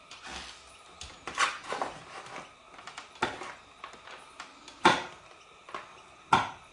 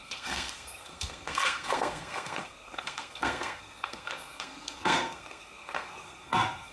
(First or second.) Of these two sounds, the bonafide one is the first